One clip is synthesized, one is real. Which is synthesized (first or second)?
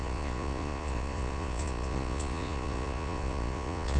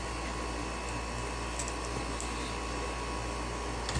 first